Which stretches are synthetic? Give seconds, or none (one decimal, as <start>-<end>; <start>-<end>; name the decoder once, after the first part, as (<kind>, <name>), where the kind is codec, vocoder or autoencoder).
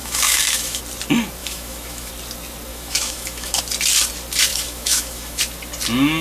0.0-0.8 (autoencoder, DAC-VAE); 1.4-2.1; 2.7-3.6; 4.5-5.4